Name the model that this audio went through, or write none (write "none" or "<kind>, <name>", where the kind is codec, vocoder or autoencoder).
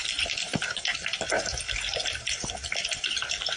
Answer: none